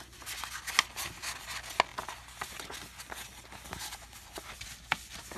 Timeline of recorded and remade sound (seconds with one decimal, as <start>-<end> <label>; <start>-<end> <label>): 0.0-5.4 recorded